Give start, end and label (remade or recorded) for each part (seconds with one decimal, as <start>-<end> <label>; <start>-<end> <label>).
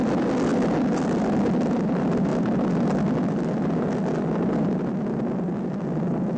0.0-6.4 recorded